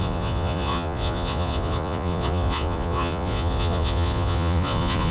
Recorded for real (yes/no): no